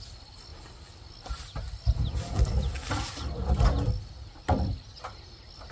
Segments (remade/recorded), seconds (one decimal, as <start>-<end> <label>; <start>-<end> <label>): 0.0-5.7 recorded